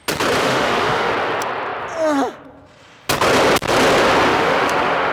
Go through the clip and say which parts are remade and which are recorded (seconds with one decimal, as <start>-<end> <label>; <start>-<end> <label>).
0.0-0.4 recorded; 0.4-1.1 remade; 1.1-4.3 recorded; 4.3-5.1 remade